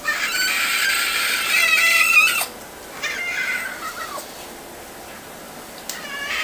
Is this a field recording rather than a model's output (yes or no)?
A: yes